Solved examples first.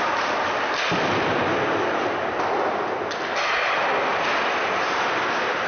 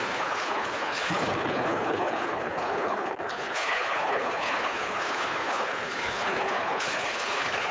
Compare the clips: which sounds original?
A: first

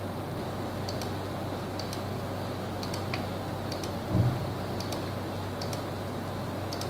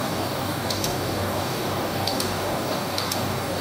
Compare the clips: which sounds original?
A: first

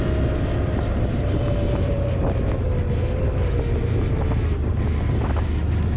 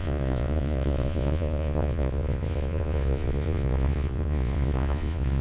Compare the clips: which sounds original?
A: first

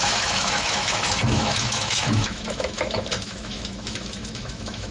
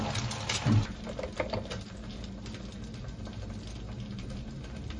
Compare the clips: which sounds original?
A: second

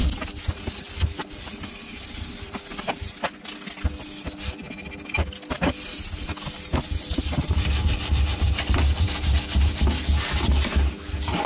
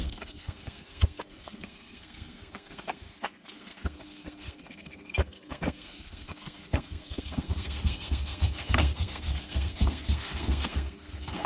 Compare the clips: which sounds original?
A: first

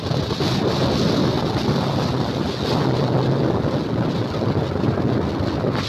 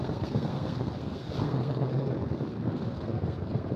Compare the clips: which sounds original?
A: first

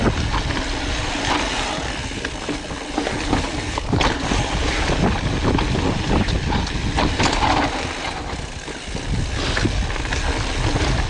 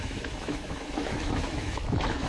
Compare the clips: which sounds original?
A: first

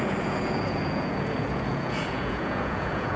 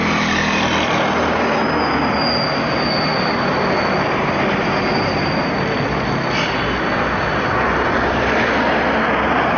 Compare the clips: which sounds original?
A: second